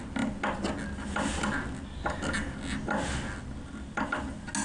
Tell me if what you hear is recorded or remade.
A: recorded